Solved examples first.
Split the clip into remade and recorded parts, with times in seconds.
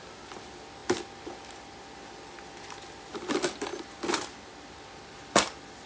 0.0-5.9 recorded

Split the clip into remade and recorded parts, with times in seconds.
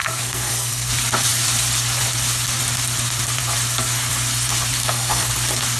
0.0-0.9 remade; 0.9-4.8 recorded; 4.8-5.3 remade; 5.3-5.8 recorded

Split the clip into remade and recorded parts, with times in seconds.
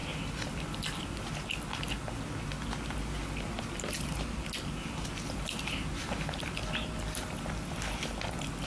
0.0-8.7 recorded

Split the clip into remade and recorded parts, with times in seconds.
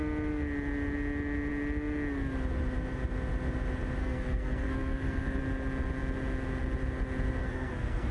0.0-4.0 recorded; 4.0-5.4 remade; 5.4-7.4 recorded; 7.4-8.1 remade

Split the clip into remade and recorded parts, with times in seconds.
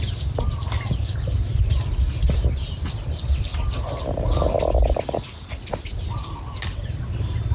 0.0-7.5 recorded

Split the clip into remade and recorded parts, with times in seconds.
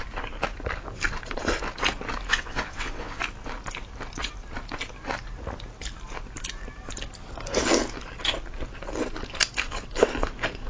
0.0-2.3 recorded; 2.3-3.2 remade; 3.2-10.7 recorded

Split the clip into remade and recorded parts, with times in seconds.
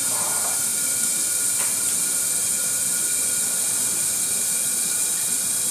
0.0-5.7 recorded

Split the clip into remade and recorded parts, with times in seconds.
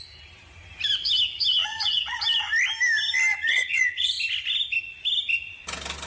0.0-1.6 recorded; 1.6-2.2 remade; 2.2-3.3 recorded; 3.3-4.1 remade; 4.1-6.1 recorded